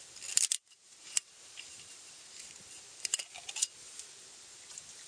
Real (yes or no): yes